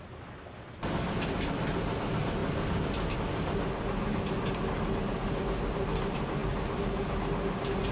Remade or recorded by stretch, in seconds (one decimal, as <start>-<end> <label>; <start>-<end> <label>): 0.0-7.9 recorded